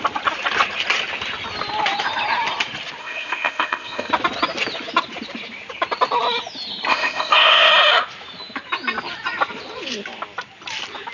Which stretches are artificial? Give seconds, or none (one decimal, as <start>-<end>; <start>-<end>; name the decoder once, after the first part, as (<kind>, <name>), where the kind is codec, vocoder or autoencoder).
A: 3.0-4.1 (codec, ZipCodec); 6.9-7.7